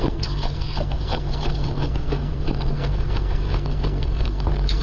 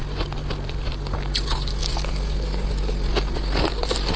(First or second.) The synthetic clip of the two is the first